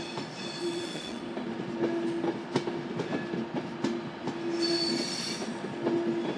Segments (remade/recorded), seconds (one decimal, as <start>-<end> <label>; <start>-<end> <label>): 0.0-0.6 recorded; 0.6-1.2 remade; 1.2-6.4 recorded